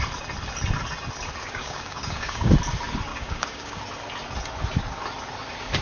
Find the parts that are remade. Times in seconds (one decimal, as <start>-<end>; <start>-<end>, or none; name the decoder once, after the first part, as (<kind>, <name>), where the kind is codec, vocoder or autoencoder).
1.4-2.5 (codec, DAC); 3.1-3.8